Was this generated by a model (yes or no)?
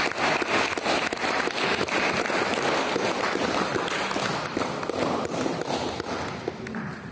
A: no